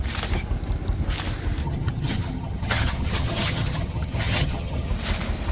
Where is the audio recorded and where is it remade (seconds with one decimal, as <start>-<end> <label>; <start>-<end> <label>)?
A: 0.0-1.6 recorded; 1.6-4.9 remade; 4.9-5.5 recorded